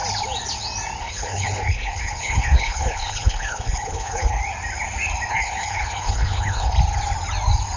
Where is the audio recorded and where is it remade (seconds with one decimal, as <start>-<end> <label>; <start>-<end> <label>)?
0.0-1.0 recorded; 1.0-4.4 remade; 4.4-5.3 recorded; 5.3-6.7 remade; 6.7-7.8 recorded